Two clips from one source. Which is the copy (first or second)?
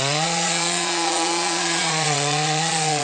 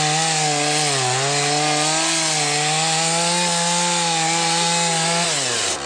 first